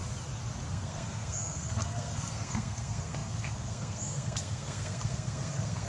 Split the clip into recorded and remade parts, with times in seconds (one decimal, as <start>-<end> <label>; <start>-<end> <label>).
0.0-0.7 recorded; 0.7-5.9 remade